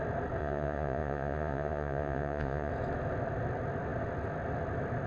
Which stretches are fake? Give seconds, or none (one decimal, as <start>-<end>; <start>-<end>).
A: 0.4-2.7